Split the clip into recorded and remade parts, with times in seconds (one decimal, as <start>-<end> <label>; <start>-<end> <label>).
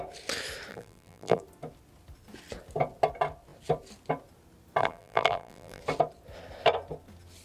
0.0-0.7 recorded; 0.7-1.4 remade; 1.4-4.8 recorded; 4.8-5.8 remade; 5.8-7.4 recorded